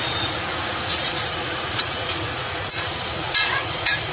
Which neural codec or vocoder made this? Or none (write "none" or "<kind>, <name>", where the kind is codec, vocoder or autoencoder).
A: vocoder, Vocos